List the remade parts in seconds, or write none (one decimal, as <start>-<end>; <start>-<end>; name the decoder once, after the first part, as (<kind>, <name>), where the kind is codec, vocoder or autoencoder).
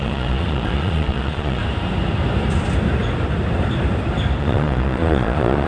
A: 0.0-1.6 (vocoder, Vocos); 4.4-5.7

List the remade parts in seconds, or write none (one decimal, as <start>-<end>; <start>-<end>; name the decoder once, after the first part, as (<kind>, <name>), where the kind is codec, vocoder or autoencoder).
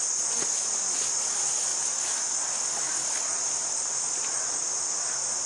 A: none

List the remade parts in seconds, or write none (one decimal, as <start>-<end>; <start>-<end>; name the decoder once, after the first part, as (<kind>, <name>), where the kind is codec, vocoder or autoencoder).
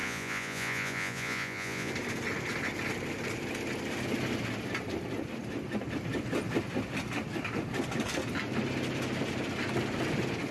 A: 0.0-1.9 (vocoder, Vocos)